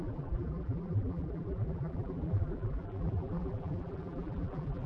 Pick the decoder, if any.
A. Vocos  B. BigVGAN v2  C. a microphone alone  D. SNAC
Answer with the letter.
B